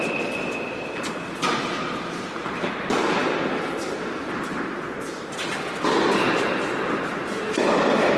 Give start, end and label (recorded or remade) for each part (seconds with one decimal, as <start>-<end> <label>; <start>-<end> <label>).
0.0-8.2 recorded